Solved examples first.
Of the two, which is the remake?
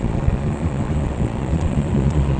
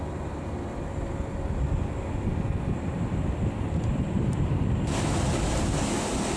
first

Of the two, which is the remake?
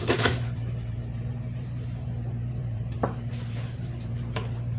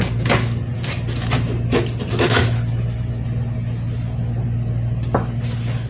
first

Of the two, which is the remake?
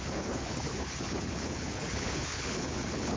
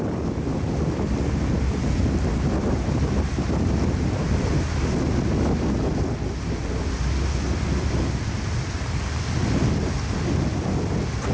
first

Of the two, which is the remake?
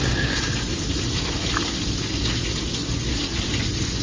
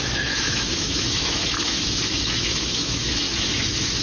second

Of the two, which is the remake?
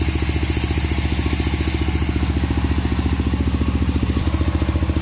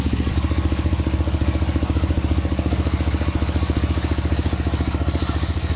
second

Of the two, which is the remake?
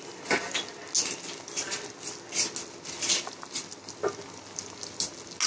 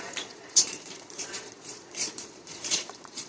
second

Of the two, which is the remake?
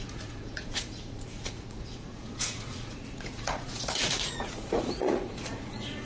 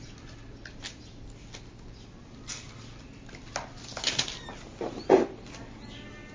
first